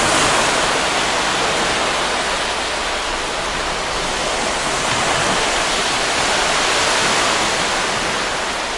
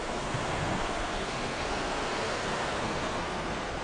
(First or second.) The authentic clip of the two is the first